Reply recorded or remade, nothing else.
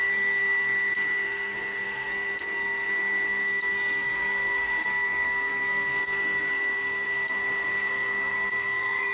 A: remade